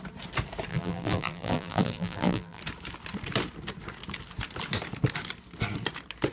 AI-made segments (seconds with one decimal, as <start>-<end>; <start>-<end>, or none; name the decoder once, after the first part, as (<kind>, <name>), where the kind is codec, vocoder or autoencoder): 0.7-2.6 (vocoder, BigVGAN v2)

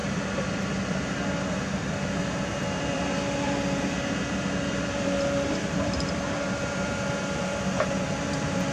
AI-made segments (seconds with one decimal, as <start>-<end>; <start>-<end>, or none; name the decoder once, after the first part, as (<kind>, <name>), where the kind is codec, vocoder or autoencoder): 2.8-8.7 (vocoder, BigVGAN v2)

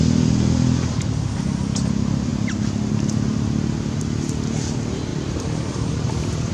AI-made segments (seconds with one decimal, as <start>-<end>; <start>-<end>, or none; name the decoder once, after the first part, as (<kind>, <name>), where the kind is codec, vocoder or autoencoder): 5.1-6.5 (vocoder, BigVGAN v2)

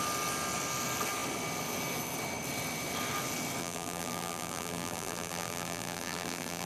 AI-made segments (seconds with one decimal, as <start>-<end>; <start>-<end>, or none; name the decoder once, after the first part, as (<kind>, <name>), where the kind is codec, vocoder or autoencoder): 3.6-6.7 (vocoder, BigVGAN v2)

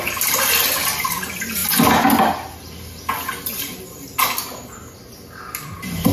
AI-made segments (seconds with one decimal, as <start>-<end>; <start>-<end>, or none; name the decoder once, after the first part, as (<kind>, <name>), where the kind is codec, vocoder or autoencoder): none

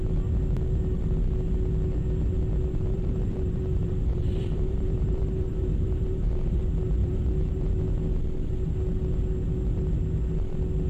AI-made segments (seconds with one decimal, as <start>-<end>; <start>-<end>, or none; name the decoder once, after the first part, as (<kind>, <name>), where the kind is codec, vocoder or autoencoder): 2.9-6.6 (vocoder, BigVGAN v2); 7.0-7.7